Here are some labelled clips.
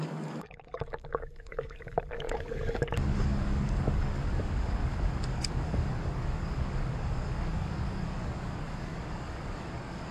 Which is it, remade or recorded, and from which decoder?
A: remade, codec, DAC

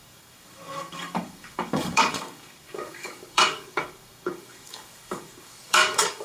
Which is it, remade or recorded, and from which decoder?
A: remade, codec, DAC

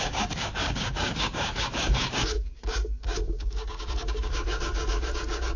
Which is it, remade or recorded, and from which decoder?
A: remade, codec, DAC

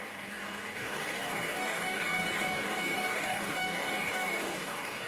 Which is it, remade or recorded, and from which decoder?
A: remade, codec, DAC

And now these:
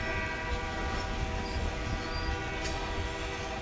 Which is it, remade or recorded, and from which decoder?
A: recorded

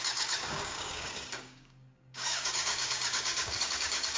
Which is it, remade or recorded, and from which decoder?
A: remade, codec, DAC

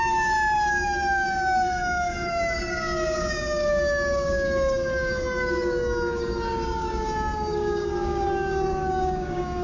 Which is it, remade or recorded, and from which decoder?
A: remade, codec, DAC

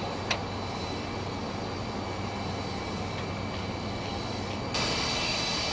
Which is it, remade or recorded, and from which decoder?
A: recorded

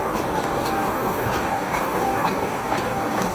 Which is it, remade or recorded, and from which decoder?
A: remade, codec, DAC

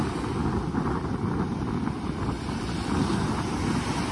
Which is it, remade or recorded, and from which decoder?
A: recorded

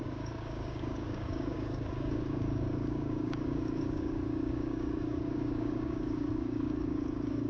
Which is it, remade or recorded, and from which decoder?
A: remade, codec, DAC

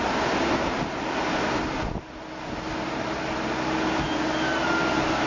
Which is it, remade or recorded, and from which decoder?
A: recorded